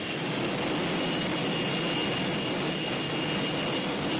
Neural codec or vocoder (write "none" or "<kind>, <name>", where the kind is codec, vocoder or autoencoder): none